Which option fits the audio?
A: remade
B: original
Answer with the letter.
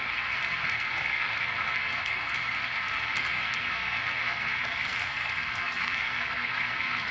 A